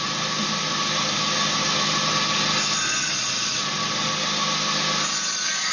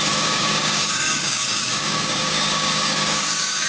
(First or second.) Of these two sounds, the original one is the first